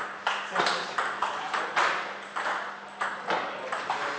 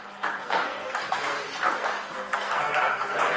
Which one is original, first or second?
first